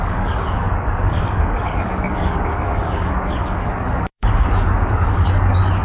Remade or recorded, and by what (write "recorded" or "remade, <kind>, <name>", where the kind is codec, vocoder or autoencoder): remade, codec, DAC